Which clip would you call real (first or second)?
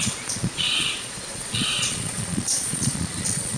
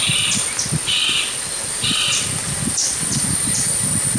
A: second